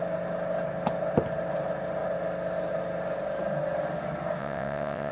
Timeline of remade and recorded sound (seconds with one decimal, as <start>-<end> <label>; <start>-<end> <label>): 0.0-4.4 recorded; 4.4-5.1 remade